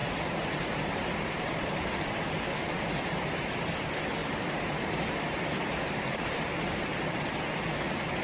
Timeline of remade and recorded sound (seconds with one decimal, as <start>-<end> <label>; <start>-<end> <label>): 0.0-1.9 remade; 1.9-4.2 recorded; 4.2-5.4 remade; 5.4-8.2 recorded